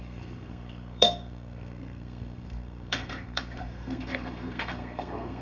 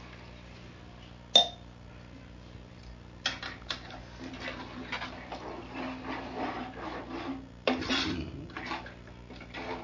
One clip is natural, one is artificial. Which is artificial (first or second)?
first